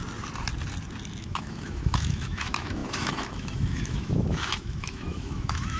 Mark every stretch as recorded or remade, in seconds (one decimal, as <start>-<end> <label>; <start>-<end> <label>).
0.0-1.2 recorded; 1.2-5.8 remade